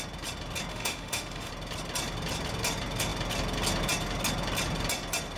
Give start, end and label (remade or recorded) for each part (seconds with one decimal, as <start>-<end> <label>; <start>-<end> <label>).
0.0-0.7 recorded; 0.7-1.5 remade; 1.5-5.4 recorded